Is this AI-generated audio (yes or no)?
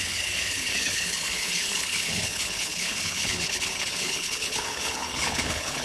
yes